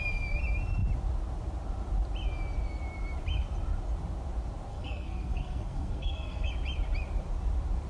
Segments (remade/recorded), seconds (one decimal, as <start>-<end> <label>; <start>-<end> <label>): 0.0-4.7 recorded; 4.7-6.5 remade; 6.5-7.9 recorded